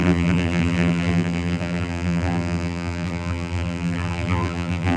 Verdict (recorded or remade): remade